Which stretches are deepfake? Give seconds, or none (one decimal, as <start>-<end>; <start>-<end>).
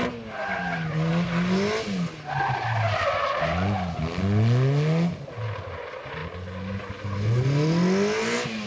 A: none